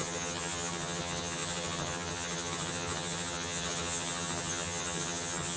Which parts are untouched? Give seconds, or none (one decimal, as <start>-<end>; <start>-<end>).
none